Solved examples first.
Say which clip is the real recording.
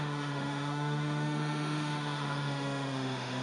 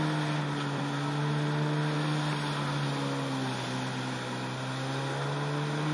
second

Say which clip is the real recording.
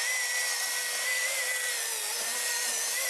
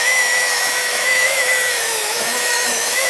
first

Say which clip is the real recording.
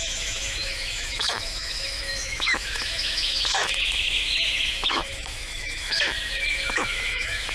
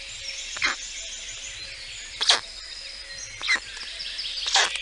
second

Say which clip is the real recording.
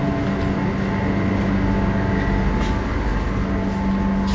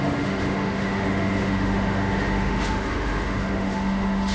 first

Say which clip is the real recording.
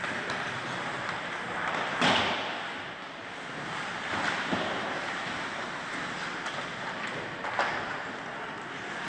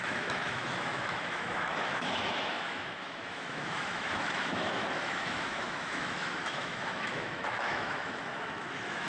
first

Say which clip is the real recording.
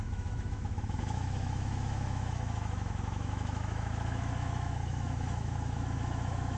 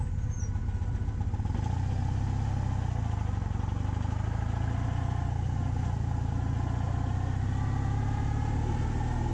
second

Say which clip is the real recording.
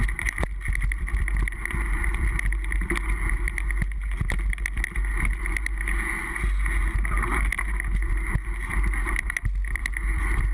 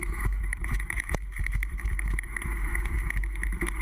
first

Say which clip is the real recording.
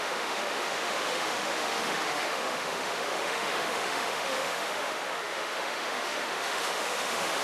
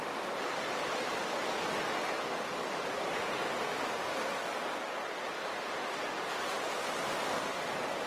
second